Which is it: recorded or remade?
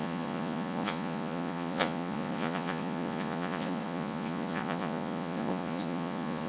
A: remade